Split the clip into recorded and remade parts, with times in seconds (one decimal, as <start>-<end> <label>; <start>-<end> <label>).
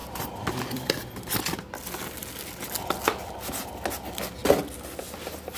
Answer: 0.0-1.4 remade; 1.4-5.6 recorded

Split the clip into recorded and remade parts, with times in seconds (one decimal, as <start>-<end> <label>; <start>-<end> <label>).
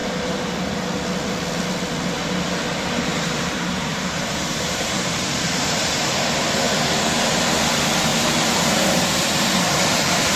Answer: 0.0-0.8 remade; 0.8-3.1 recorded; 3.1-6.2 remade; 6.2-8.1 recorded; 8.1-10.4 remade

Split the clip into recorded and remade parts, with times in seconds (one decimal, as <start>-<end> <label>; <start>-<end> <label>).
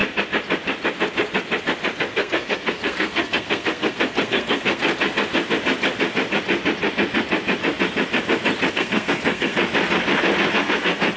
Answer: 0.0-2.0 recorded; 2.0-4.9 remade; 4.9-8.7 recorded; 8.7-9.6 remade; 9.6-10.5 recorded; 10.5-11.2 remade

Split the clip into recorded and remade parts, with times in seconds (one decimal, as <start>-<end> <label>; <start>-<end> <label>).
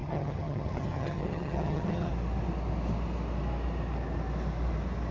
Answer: 0.0-2.1 remade; 2.1-5.1 recorded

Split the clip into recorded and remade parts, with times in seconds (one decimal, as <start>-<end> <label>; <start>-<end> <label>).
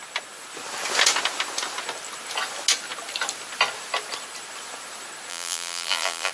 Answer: 0.0-5.3 recorded; 5.3-6.3 remade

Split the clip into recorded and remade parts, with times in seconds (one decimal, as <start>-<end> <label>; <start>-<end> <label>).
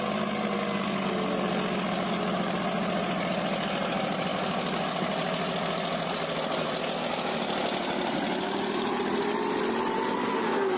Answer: 0.0-10.8 recorded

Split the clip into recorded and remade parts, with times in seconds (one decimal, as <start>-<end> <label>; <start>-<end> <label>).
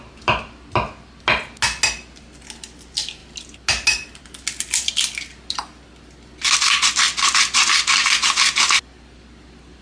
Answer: 0.0-9.8 recorded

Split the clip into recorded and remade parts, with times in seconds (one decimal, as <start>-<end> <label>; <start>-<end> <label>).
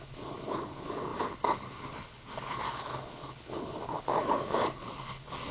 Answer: 0.0-5.5 remade